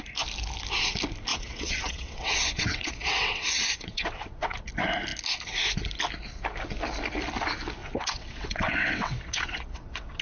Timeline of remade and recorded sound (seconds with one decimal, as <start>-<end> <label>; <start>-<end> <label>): 0.0-1.3 recorded; 1.3-4.6 remade; 4.6-7.8 recorded; 7.8-10.2 remade